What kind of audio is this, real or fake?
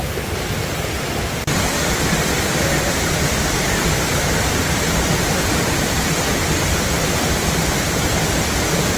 fake